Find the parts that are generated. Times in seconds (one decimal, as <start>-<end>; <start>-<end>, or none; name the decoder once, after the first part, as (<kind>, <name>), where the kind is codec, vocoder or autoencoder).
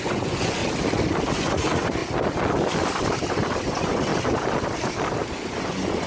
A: 0.0-0.6 (vocoder, Vocos); 1.3-2.0; 3.6-4.1; 5.6-6.1